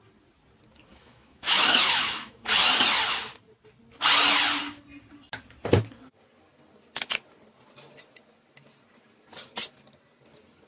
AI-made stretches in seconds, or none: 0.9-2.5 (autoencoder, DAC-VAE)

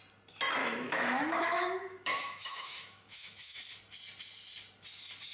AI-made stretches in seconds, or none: 0.6-3.6 (autoencoder, DAC-VAE)

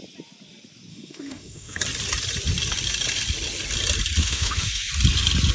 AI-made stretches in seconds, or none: 0.9-1.8 (autoencoder, DAC-VAE); 4.2-4.9